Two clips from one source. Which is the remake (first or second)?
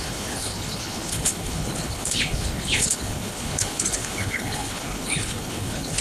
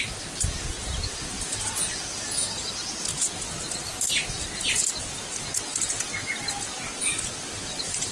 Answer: first